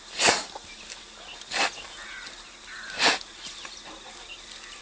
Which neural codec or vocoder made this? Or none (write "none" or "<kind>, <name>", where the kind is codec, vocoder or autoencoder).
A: none